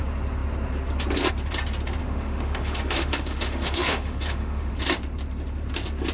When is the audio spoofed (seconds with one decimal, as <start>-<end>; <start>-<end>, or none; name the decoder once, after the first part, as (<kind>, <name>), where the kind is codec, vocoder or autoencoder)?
2.0-4.7 (autoencoder, DAC-VAE)